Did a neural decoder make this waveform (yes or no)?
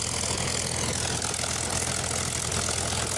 no